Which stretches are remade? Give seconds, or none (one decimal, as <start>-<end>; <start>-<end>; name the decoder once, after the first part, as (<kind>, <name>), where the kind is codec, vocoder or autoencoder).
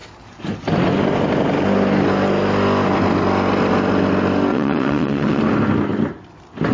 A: 4.5-5.4 (vocoder, WaveNeXt)